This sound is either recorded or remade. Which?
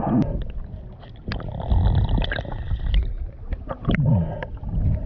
recorded